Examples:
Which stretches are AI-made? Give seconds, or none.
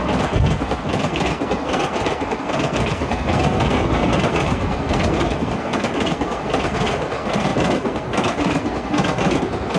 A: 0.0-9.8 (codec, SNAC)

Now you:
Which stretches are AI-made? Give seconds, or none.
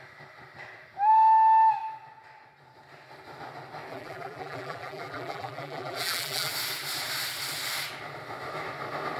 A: 3.9-6.5 (vocoder, BigVGAN v2)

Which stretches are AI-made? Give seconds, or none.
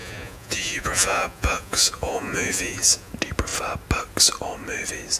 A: 0.0-3.1 (vocoder, Vocos)